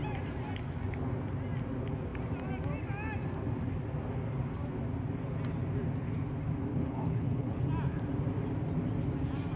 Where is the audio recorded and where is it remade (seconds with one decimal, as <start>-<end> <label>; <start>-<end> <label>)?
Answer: 0.0-6.7 recorded; 6.7-7.6 remade; 7.6-9.6 recorded